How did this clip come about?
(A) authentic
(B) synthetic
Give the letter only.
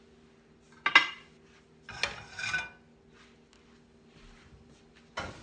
A